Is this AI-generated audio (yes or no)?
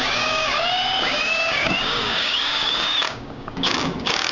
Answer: yes